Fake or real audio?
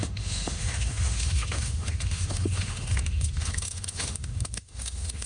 fake